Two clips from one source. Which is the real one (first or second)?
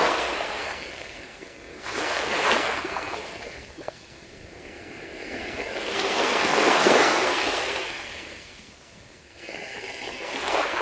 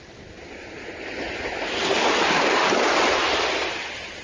second